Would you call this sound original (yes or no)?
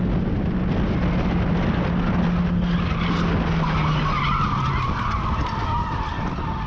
yes